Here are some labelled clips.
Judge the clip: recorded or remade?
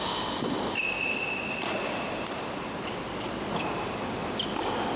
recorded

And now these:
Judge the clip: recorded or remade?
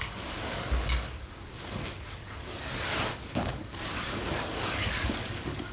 remade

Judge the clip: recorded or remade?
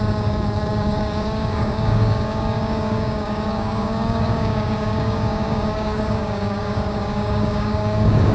remade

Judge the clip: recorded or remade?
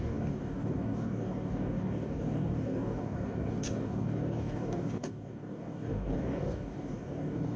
remade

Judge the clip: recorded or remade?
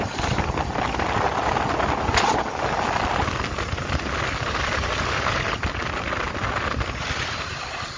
recorded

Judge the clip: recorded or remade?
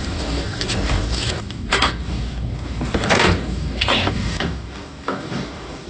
remade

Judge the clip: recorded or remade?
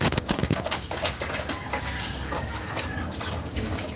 remade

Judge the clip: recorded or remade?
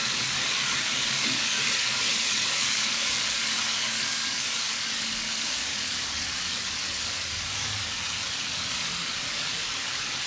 remade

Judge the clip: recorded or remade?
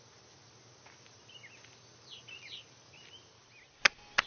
recorded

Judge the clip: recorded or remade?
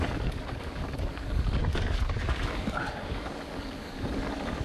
remade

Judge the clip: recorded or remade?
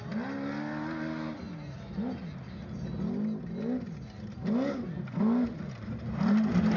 recorded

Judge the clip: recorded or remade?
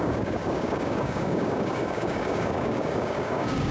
remade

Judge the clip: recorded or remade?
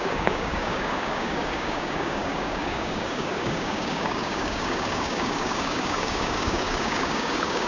remade